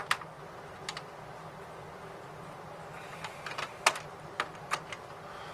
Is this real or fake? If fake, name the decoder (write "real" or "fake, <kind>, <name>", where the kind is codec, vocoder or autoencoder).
real